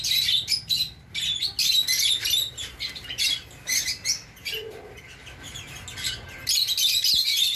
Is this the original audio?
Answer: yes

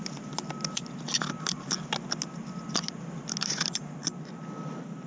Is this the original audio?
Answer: yes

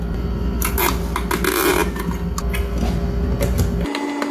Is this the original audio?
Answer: yes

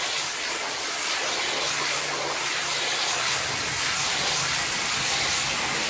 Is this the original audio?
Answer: yes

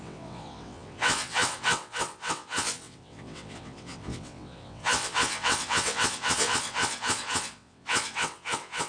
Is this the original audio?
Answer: no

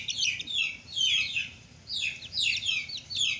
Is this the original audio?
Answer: yes